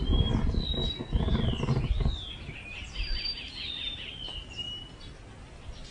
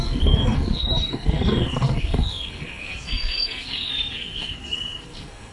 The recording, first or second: first